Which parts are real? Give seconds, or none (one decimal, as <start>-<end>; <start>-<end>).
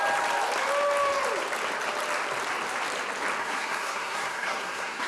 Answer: 0.0-3.4